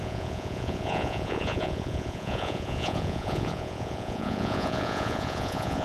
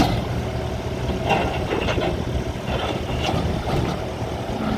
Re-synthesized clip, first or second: first